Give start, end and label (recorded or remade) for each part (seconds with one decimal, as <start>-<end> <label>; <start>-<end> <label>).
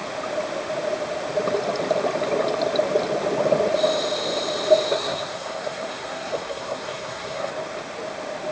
0.0-4.9 recorded; 4.9-7.5 remade; 7.5-8.5 recorded